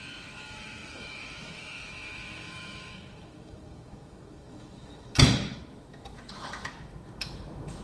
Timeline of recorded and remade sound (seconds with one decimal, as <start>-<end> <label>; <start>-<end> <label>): 0.0-7.8 remade